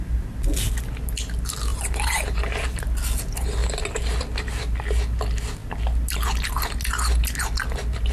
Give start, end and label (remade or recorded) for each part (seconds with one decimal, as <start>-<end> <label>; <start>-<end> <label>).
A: 0.0-1.7 recorded; 1.7-2.4 remade; 2.4-8.1 recorded

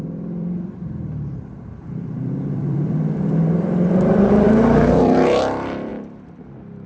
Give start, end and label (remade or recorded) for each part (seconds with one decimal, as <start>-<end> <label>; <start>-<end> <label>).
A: 0.0-6.9 remade